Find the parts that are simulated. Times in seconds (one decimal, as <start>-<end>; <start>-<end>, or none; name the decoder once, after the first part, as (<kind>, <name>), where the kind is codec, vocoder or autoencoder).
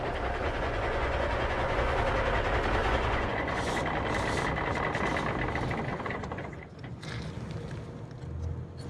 0.4-2.0 (vocoder, Vocos); 2.8-3.8; 5.9-7.0